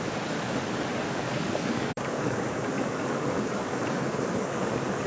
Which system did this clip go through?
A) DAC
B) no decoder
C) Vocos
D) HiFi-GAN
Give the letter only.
A